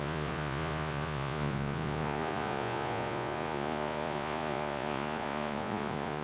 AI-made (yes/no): yes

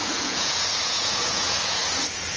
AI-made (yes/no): yes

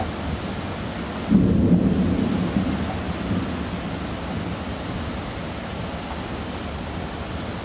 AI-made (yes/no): no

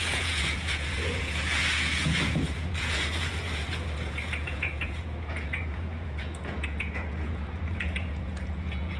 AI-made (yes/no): yes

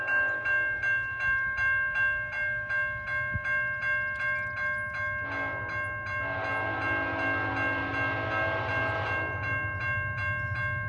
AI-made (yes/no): no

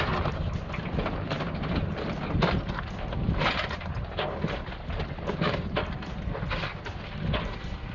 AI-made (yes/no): no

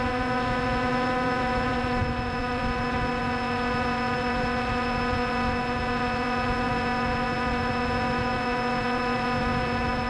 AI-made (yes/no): yes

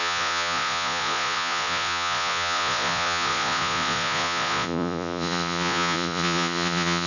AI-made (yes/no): yes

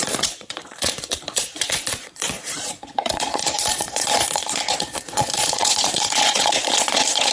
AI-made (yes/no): yes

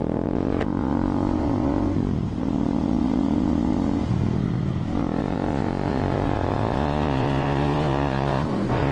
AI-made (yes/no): yes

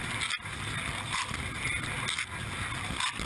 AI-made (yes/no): no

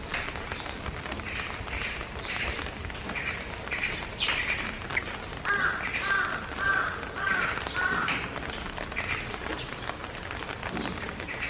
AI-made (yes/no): no